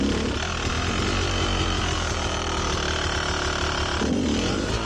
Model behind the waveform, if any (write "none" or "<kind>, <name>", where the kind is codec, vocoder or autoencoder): none